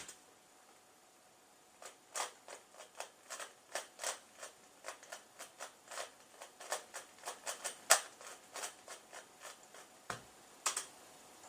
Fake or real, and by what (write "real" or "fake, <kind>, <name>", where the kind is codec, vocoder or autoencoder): real